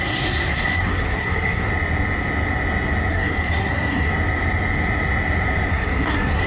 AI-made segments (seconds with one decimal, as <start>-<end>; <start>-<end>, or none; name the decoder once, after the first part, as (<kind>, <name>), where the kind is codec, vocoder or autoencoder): 0.0-1.7 (codec, SNAC); 3.1-4.1; 5.7-6.5